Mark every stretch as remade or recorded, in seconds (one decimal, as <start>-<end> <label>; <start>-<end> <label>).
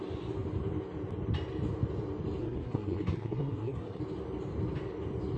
0.0-2.4 recorded; 2.4-4.0 remade; 4.0-5.4 recorded